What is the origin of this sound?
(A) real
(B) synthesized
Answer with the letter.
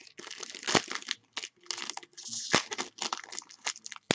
A